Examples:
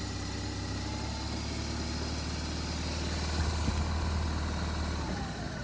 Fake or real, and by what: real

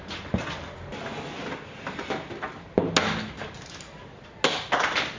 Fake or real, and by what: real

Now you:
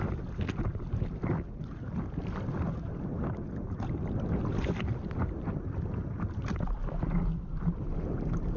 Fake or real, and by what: real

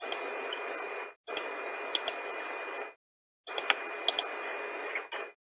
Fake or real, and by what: real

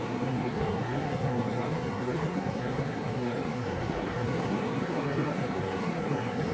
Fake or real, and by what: fake, codec, SNAC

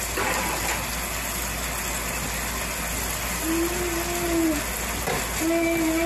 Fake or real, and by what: real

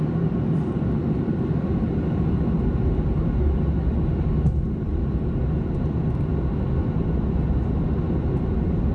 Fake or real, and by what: real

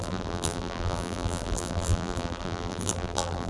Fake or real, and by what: fake, vocoder, BigVGAN v2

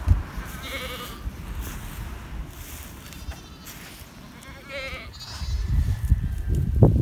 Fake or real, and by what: real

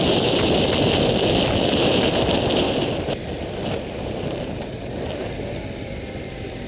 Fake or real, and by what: real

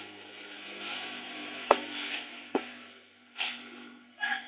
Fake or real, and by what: fake, codec, SNAC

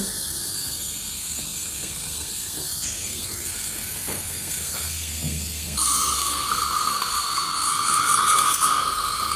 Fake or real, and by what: fake, codec, SNAC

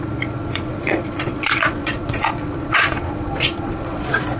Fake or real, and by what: fake, vocoder, Vocos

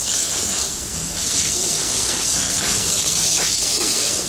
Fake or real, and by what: fake, codec, SNAC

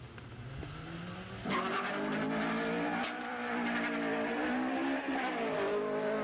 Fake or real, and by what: real